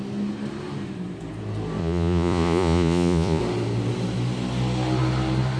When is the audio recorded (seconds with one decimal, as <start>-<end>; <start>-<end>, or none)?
0.0-1.8; 3.4-5.6